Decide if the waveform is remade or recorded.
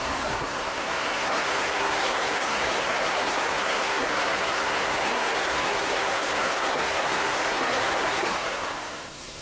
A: remade